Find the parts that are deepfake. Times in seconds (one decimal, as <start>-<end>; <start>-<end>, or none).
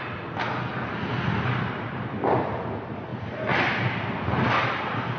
none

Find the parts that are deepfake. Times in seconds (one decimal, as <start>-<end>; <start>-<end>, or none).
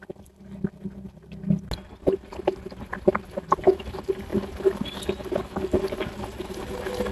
none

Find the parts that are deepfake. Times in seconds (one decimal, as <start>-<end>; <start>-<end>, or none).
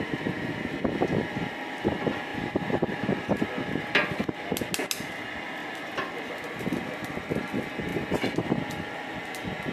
none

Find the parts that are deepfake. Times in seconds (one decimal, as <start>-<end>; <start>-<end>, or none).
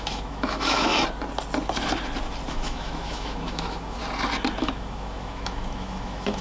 0.0-0.9; 2.5-4.0; 4.6-6.4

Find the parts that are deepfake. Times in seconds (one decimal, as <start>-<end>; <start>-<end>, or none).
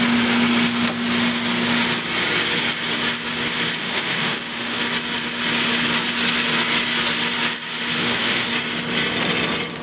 3.8-4.8; 8.0-8.5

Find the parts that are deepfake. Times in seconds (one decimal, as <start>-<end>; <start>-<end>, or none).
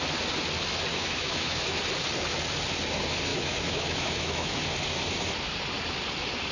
0.9-1.8; 3.3-4.6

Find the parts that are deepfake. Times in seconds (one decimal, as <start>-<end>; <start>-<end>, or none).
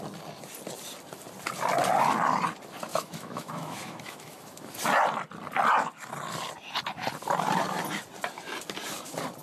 2.9-4.7